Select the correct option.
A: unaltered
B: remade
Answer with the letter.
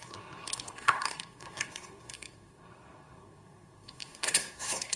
B